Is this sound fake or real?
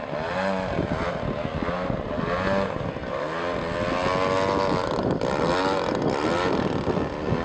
real